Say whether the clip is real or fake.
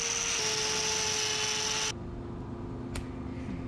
real